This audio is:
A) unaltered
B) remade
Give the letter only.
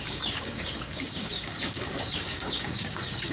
B